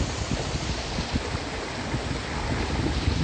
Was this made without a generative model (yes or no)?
yes